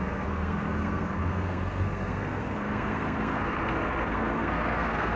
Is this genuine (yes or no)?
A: no